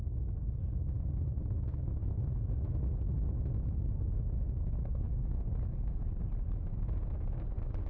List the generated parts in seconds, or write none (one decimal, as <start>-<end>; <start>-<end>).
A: none

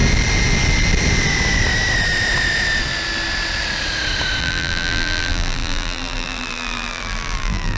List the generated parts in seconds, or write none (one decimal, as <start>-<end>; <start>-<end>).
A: 4.4-7.8